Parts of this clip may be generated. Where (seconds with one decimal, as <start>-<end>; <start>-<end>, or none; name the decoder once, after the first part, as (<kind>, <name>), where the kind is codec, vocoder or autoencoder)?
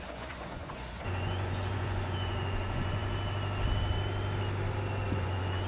0.0-3.0 (vocoder, Vocos); 5.1-5.7